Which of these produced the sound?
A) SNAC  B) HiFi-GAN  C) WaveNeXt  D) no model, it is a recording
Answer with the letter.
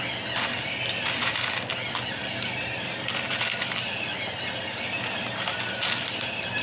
D